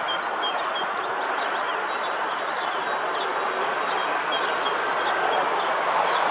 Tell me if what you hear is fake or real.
real